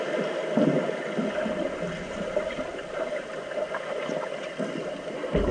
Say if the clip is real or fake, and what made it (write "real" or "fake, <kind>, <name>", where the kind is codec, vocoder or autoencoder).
real